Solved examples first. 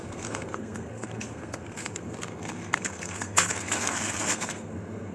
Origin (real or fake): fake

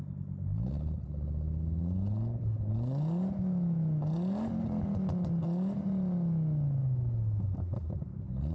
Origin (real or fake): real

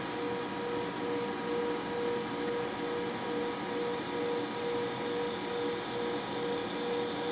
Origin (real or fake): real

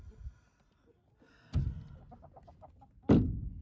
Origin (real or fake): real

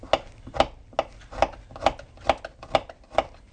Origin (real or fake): real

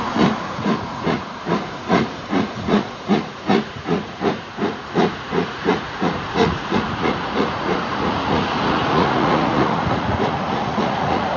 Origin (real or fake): fake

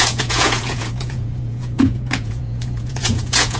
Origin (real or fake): fake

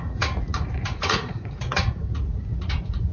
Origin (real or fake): fake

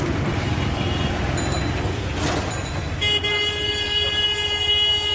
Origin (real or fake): real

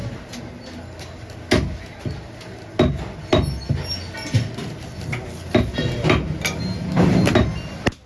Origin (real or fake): real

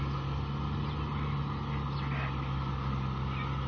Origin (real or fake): real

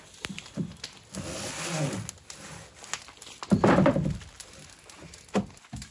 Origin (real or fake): real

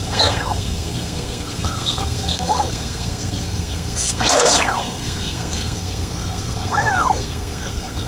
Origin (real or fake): fake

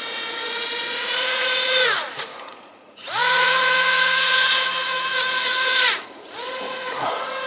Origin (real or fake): fake